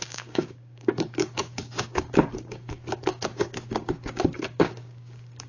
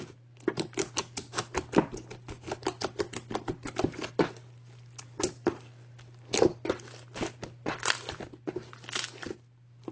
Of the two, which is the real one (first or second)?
second